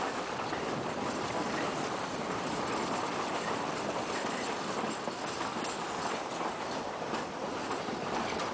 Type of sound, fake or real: fake